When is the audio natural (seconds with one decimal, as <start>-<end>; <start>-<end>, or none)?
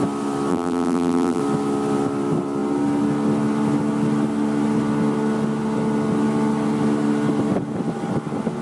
0.0-0.5; 1.4-8.6